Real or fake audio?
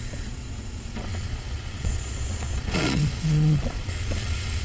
fake